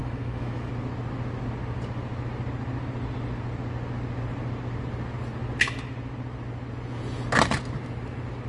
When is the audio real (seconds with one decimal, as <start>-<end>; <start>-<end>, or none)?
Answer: 0.7-8.5